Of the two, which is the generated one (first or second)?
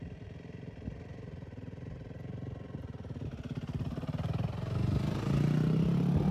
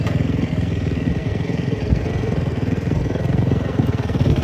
second